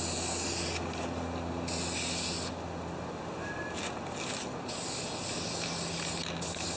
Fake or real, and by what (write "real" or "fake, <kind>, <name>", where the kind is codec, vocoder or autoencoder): real